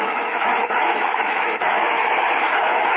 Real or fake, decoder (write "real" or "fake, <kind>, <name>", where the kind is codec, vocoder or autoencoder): fake, autoencoder, DAC-VAE